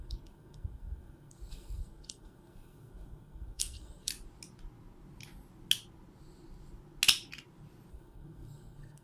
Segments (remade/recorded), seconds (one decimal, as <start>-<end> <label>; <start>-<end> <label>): 0.0-4.1 remade; 4.1-7.9 recorded; 7.9-9.0 remade